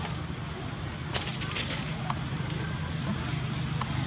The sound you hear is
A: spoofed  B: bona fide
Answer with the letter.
B